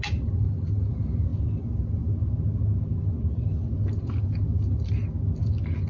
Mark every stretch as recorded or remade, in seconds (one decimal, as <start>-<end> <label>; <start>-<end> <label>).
0.0-5.9 recorded